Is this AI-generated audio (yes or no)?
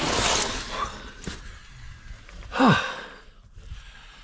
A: no